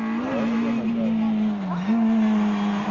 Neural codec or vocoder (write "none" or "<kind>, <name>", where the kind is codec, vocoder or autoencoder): none